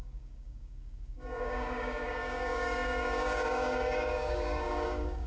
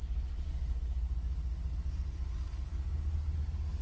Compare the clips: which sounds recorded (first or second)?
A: second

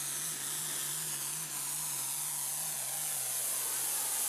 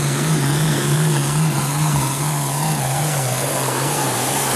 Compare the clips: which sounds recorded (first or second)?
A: first